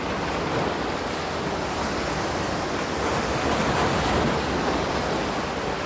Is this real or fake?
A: real